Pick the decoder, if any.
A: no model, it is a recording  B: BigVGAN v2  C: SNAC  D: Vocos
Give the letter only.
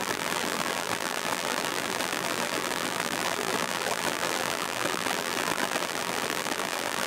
B